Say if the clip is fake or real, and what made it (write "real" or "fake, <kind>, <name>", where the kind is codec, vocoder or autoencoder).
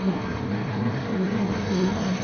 fake, codec, SNAC